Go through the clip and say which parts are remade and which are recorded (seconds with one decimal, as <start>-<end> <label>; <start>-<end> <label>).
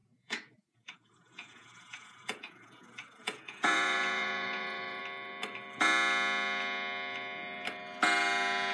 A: 0.0-5.0 remade; 5.0-8.7 recorded